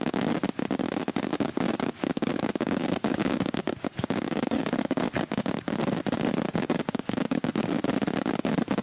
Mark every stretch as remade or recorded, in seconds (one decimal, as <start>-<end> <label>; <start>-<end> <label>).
0.0-1.3 recorded; 1.3-5.7 remade; 5.7-6.5 recorded; 6.5-7.8 remade; 7.8-8.8 recorded